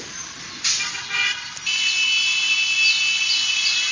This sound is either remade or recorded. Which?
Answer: recorded